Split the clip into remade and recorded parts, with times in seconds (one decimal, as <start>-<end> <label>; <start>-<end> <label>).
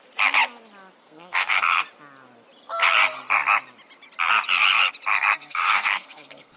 0.0-1.0 recorded; 1.0-1.8 remade; 1.8-5.1 recorded; 5.1-6.6 remade